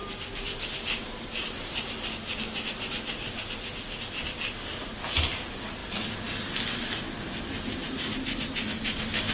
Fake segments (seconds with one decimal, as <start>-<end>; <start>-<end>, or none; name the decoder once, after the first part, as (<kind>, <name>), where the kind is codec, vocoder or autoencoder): none